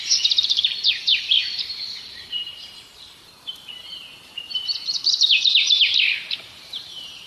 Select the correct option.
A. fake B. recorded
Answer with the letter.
A